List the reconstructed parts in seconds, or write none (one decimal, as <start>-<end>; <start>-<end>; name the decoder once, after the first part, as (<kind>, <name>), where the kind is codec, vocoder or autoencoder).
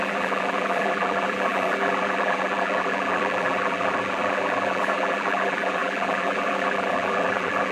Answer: 0.0-7.7 (vocoder, BigVGAN v2)